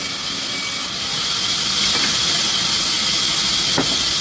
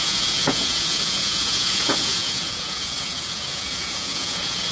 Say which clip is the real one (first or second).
first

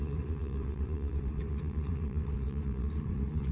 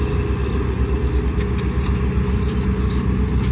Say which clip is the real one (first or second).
second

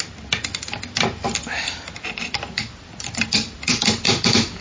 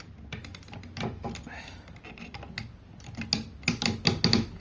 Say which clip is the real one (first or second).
second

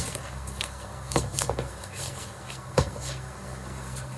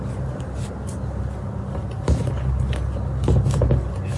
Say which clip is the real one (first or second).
second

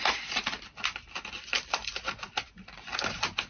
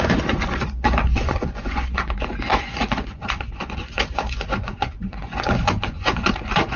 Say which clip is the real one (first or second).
first